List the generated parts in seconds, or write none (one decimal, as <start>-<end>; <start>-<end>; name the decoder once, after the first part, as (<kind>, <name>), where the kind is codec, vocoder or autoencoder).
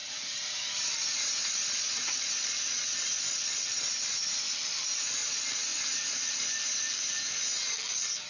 0.0-2.2 (vocoder, Vocos); 5.7-6.3